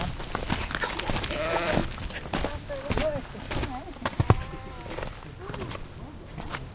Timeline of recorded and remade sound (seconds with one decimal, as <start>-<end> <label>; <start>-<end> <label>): 0.0-6.7 recorded